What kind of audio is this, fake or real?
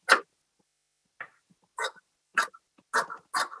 real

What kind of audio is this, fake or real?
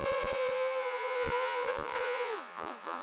fake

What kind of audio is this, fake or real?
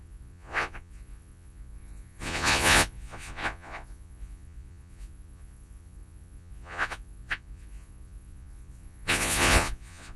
fake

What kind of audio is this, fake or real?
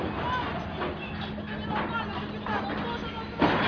real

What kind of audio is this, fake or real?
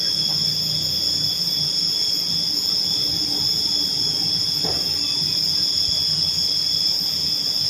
real